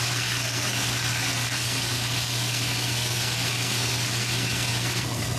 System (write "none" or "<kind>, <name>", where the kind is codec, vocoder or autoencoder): codec, SNAC